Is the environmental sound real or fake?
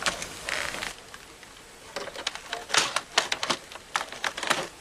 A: real